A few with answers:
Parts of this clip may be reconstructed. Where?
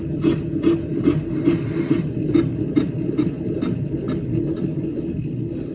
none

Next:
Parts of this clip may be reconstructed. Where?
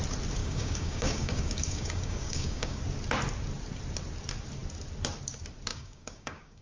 0.4-2.8 (codec, DAC); 5.7-6.6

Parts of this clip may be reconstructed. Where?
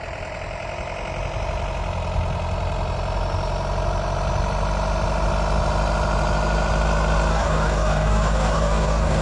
7.3-9.2 (codec, DAC)